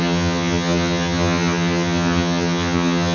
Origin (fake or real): fake